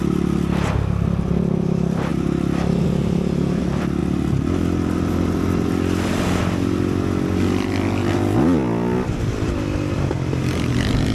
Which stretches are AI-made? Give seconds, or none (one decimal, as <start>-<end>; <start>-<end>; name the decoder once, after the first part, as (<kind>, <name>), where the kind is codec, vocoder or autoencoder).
none